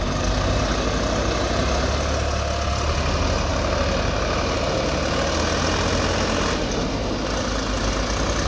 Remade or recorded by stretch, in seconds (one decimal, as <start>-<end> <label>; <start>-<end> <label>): 0.0-8.5 recorded